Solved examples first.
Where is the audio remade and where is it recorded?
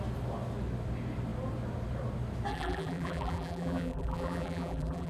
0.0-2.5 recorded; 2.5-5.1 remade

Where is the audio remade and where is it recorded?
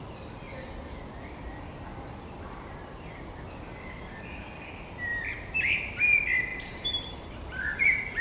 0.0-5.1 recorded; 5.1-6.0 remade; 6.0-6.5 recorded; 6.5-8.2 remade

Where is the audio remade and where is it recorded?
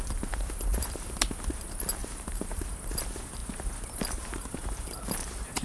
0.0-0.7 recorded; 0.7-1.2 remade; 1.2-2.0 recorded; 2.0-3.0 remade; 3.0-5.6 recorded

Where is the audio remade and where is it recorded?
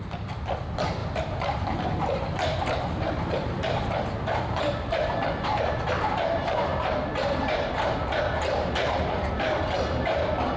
0.0-1.0 recorded; 1.0-5.9 remade; 5.9-6.7 recorded; 6.7-9.6 remade; 9.6-10.6 recorded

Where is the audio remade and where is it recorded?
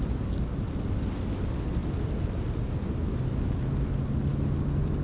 0.0-1.8 recorded; 1.8-2.7 remade; 2.7-5.0 recorded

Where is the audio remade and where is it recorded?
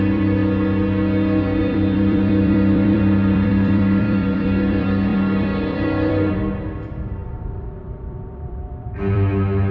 0.0-0.4 remade; 0.4-1.6 recorded; 1.6-9.7 remade